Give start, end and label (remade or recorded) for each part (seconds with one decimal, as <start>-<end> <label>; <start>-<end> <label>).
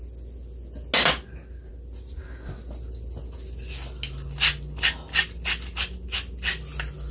0.0-7.1 recorded